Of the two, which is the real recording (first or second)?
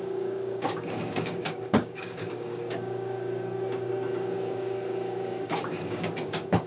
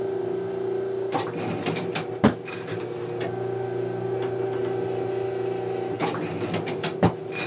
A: second